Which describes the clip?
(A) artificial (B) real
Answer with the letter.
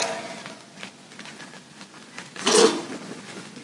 A